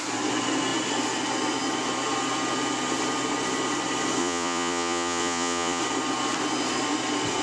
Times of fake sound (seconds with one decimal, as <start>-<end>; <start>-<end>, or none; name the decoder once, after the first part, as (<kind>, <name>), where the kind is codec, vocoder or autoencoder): 4.2-5.8 (vocoder, Vocos)